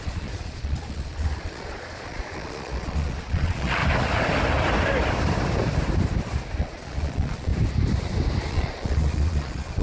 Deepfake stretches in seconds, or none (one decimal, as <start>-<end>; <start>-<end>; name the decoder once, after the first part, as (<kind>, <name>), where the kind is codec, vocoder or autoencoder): 0.0-3.8 (vocoder, Vocos); 6.6-7.5; 8.5-9.8